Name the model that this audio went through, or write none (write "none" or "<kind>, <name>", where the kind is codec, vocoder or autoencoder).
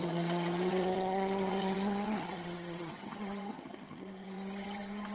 vocoder, HiFi-GAN